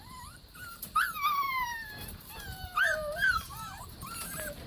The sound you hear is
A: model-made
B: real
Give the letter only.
A